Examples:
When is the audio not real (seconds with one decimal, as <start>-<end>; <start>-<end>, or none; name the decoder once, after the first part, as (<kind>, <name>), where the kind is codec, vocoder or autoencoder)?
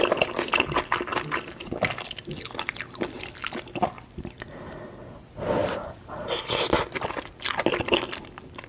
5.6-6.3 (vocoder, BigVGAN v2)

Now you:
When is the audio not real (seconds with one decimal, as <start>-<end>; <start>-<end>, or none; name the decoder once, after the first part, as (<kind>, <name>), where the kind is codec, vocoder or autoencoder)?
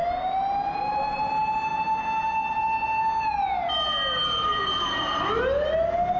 none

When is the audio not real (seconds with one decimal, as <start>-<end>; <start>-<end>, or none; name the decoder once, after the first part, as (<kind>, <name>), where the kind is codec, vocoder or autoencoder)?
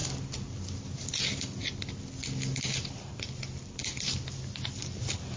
0.0-1.9 (vocoder, BigVGAN v2); 3.8-4.7